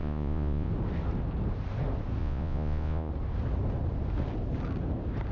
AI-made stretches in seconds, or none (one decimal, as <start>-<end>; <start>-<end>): 0.0-0.7; 2.2-3.1

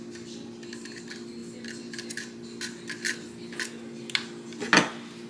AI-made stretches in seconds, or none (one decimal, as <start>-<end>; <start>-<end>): none

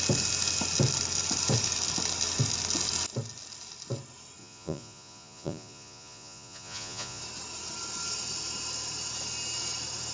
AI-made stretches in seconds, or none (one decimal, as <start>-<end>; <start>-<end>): 4.4-7.2